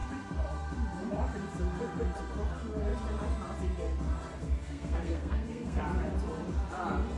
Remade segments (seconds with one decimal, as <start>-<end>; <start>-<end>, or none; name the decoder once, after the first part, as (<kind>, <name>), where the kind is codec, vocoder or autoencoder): 4.4-5.8 (codec, SNAC)